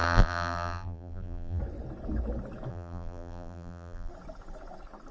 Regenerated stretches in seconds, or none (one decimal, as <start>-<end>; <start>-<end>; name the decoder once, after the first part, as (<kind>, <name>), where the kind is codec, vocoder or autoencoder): 0.0-1.6 (vocoder, BigVGAN v2); 2.7-4.1